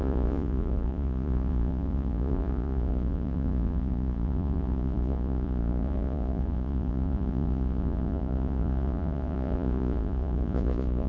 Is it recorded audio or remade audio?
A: remade